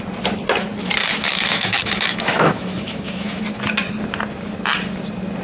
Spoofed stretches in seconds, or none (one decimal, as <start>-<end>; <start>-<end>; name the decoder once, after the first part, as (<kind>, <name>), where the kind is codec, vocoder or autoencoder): 1.0-3.4 (autoencoder, DAC-VAE)

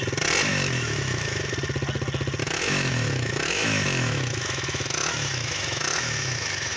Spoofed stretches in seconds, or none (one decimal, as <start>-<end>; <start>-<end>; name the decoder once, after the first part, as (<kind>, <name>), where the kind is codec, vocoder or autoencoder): 0.5-1.5 (autoencoder, DAC-VAE); 2.4-6.8